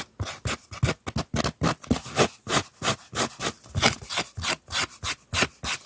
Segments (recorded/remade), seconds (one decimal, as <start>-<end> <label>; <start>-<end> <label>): 0.0-5.9 recorded